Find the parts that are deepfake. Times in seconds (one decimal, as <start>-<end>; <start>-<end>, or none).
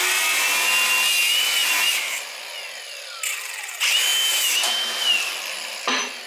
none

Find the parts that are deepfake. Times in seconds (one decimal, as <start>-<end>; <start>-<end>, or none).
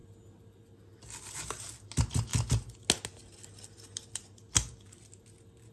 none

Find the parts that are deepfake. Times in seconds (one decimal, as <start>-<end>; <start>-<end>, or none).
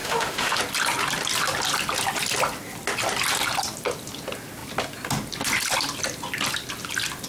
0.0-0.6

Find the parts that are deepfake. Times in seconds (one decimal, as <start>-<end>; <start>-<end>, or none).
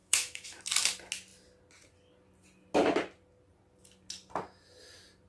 0.0-0.6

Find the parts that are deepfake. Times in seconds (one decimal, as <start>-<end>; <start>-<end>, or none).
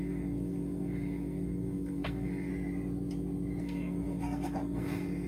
0.0-2.5; 3.6-5.3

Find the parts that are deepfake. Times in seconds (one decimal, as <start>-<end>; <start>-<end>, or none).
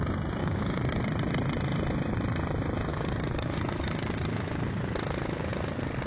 0.4-1.0; 2.9-4.7